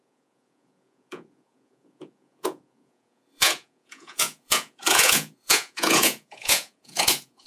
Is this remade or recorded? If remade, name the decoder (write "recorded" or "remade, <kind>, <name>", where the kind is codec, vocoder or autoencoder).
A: remade, vocoder, Vocos